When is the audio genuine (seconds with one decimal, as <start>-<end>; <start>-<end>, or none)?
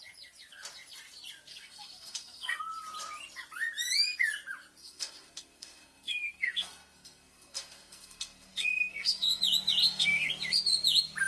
0.0-1.5; 2.6-4.8; 9.4-9.8; 10.3-11.3